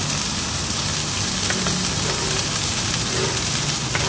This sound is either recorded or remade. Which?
recorded